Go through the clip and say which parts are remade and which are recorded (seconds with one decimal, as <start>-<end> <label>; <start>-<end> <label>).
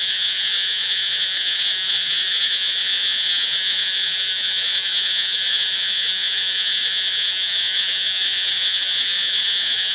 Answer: 0.0-9.9 remade